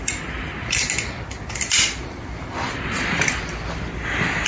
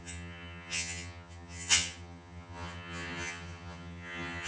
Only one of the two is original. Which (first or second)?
first